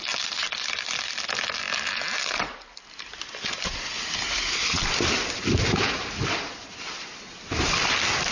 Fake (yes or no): no